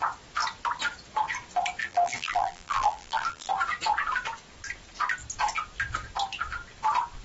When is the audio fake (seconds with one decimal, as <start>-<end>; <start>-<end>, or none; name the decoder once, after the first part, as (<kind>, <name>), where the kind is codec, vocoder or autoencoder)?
1.8-3.5 (vocoder, BigVGAN v2)